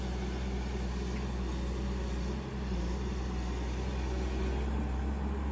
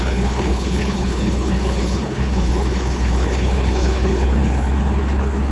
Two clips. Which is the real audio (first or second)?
first